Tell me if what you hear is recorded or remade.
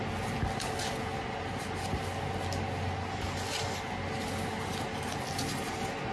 recorded